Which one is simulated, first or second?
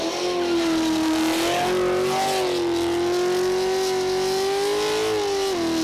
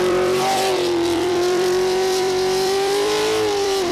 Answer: second